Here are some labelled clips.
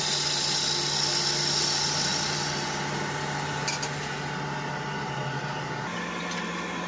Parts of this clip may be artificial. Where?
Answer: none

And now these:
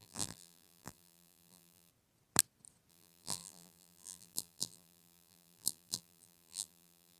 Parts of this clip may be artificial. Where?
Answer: 0.0-1.9 (vocoder, BigVGAN v2); 2.9-7.2

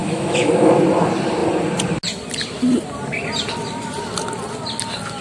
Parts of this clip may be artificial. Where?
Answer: 0.0-0.7 (autoencoder, DAC-VAE)

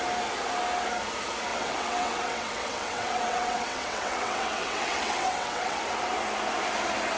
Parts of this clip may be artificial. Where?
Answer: 1.5-5.8 (vocoder, WaveNeXt)

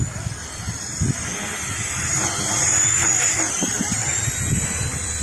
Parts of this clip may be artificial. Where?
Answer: none